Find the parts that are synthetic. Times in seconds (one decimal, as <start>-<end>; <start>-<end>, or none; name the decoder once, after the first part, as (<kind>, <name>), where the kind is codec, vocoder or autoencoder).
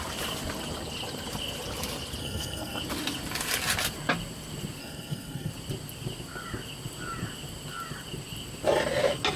2.2-2.8 (codec, SNAC); 4.8-5.5